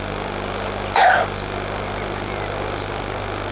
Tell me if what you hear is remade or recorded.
recorded